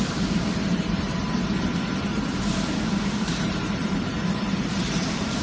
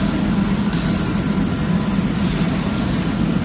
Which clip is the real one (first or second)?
second